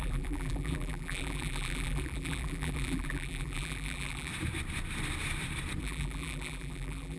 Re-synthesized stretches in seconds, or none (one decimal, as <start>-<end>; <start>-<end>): 0.0-4.3; 5.8-7.2